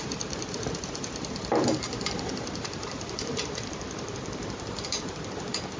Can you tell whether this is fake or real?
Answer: fake